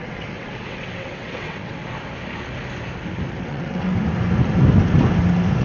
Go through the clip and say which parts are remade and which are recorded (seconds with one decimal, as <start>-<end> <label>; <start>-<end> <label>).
0.0-1.8 remade; 1.8-3.4 recorded; 3.4-3.9 remade; 3.9-5.6 recorded